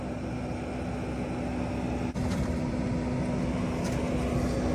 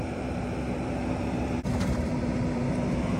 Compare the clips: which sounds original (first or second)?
first